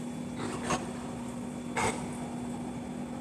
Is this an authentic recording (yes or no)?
no